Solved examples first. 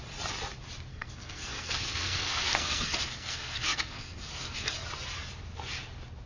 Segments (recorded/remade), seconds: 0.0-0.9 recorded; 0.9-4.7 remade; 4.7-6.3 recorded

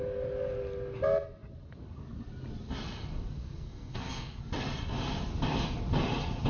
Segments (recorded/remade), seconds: 0.0-3.4 recorded; 3.4-4.4 remade; 4.4-6.5 recorded

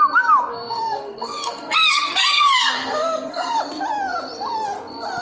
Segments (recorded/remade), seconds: 0.0-0.5 recorded; 0.5-3.6 remade; 3.6-5.2 recorded

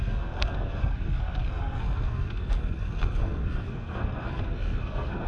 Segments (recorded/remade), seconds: 0.0-5.3 remade

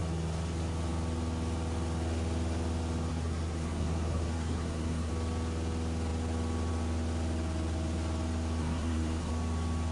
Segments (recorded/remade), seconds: 0.0-3.1 recorded; 3.1-5.1 remade; 5.1-8.6 recorded; 8.6-9.3 remade; 9.3-9.9 recorded